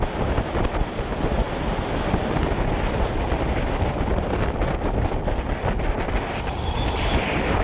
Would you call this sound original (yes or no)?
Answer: yes